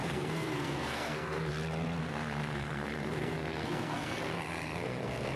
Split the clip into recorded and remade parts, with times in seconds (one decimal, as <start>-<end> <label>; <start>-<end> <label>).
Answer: 0.0-1.5 remade; 1.5-2.0 recorded; 2.0-5.4 remade